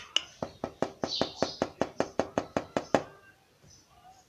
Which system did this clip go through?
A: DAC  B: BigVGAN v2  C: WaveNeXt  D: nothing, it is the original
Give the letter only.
D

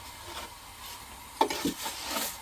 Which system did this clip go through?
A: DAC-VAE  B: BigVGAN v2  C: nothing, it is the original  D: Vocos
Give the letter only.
B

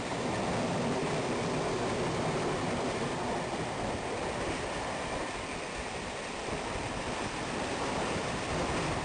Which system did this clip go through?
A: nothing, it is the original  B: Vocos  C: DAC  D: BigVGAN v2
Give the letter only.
D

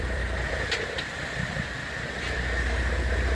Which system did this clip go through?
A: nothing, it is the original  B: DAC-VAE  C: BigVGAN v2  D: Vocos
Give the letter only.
C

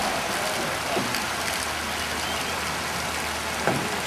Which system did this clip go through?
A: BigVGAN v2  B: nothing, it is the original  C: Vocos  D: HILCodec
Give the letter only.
B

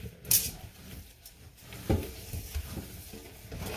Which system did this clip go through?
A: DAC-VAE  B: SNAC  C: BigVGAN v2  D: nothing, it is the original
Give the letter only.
C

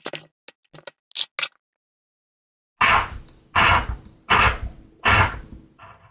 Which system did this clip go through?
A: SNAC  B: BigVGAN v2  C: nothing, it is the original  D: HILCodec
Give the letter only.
C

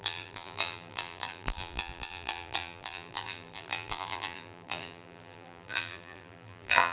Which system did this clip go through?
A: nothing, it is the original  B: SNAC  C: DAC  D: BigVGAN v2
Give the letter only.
D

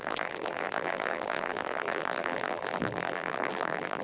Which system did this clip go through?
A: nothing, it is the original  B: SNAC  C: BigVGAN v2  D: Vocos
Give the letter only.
C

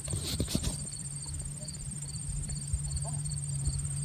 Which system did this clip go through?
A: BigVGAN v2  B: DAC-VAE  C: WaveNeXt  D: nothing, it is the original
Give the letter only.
A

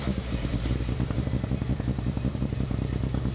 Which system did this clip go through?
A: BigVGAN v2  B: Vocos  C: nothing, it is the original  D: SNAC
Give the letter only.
A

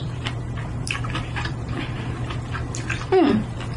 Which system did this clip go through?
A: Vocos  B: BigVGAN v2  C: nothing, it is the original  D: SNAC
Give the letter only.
C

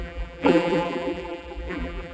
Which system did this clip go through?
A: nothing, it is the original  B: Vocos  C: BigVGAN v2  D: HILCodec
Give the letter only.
C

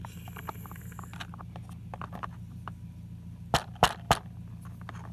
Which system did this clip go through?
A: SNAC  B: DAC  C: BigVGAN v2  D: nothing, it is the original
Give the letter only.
D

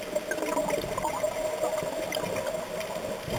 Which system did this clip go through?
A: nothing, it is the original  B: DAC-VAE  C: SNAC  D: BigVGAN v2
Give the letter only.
A